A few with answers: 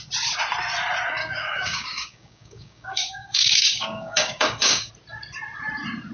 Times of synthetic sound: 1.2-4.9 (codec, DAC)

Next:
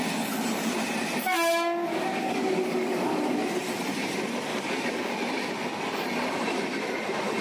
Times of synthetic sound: 1.9-3.4 (codec, DAC); 4.5-5.1